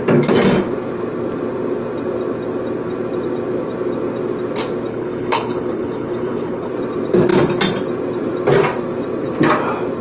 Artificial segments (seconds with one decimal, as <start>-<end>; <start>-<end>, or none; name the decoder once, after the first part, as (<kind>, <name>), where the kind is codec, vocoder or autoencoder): 4.9-6.7 (codec, HILCodec)